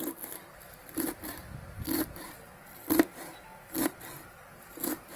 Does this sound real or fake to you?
real